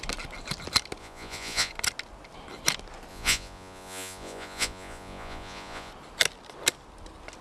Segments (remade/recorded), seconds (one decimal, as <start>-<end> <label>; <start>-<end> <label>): 0.0-1.0 recorded; 1.0-1.7 remade; 1.7-3.1 recorded; 3.1-5.9 remade; 5.9-7.4 recorded